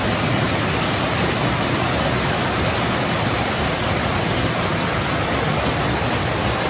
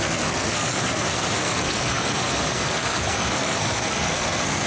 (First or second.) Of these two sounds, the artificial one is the second